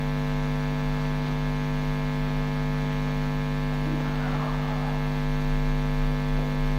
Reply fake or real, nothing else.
real